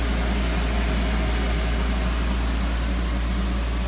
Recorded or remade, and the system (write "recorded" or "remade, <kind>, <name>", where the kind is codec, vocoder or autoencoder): recorded